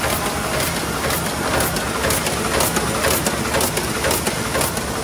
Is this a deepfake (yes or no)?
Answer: no